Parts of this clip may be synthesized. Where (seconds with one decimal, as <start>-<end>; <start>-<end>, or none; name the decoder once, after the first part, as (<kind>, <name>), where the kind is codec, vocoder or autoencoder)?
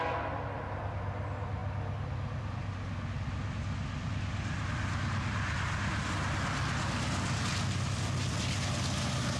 none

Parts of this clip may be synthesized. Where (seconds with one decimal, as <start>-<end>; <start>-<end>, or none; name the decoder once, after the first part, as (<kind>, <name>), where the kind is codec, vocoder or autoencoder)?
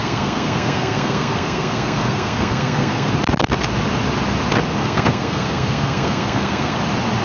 0.0-3.1 (codec, SNAC); 4.8-6.8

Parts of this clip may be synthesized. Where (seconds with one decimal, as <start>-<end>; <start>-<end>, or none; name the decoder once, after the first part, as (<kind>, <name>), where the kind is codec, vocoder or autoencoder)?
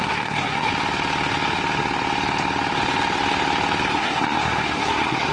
0.0-0.7 (codec, SNAC); 3.9-5.3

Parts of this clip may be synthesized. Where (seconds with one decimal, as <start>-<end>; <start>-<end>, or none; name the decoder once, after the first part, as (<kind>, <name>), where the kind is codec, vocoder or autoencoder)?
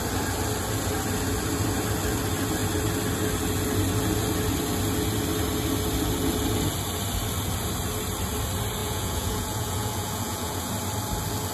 8.8-10.7 (vocoder, Vocos)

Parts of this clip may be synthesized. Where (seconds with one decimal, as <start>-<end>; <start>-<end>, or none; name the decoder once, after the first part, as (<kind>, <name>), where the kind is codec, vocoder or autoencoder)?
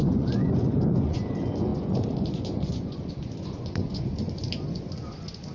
0.0-5.5 (vocoder, Vocos)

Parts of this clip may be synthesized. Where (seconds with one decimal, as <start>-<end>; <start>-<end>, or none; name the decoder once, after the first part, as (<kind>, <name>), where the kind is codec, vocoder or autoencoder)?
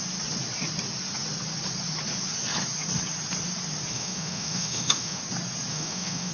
3.9-5.2 (autoencoder, DAC-VAE); 5.7-6.3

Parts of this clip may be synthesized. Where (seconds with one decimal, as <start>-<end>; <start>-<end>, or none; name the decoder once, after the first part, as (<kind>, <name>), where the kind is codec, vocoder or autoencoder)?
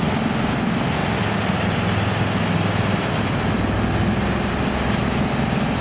none